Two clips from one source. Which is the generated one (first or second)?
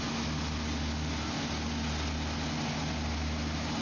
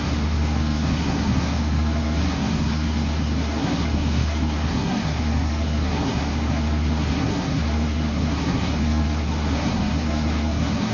second